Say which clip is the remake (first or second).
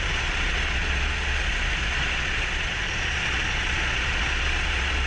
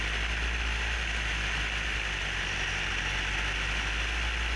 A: first